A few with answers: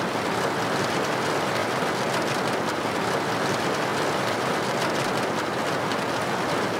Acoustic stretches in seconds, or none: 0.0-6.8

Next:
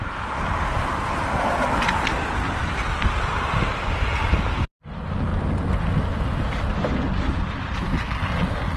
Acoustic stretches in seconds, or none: 0.0-8.8

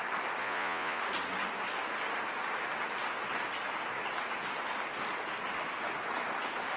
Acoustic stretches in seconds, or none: 0.0-0.4; 1.0-6.8

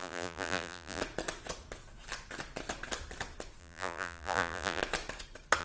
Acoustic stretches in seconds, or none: 1.0-3.6; 4.8-5.6

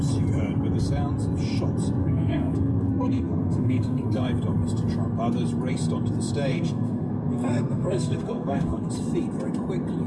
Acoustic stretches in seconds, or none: 0.0-2.0; 4.2-6.5; 8.9-10.1

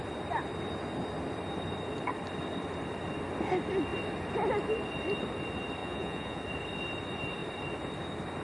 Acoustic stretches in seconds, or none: 0.0-5.8; 6.4-8.4

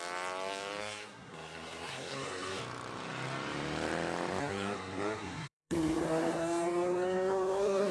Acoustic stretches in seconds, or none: 0.0-0.8; 2.6-4.4